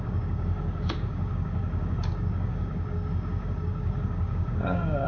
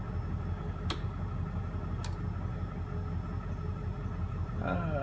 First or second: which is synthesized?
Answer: first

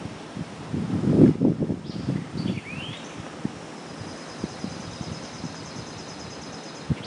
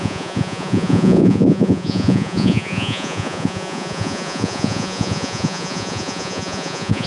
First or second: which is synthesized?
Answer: second